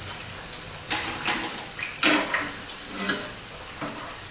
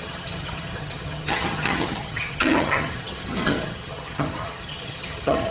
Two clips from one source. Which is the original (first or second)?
first